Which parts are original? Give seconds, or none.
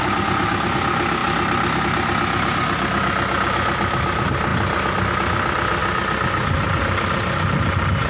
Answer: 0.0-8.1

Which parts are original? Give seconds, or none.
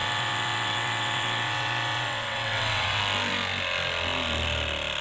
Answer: 3.0-5.0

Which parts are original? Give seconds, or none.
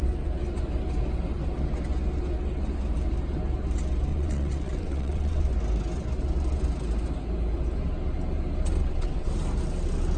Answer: 0.0-4.1; 5.4-8.8; 9.3-10.2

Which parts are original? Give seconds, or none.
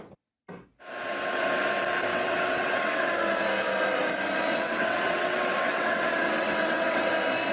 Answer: 0.0-2.1; 3.1-4.5; 7.1-7.5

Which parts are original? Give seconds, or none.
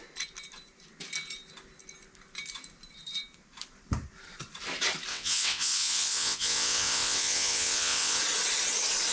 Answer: 0.0-5.1; 8.2-9.1